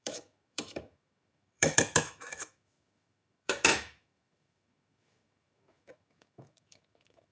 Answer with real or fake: fake